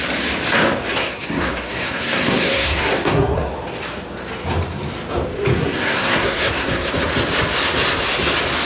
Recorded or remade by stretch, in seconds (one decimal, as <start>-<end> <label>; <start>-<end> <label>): 0.0-1.0 recorded; 1.0-3.5 remade; 3.5-5.5 recorded; 5.5-6.9 remade; 6.9-8.6 recorded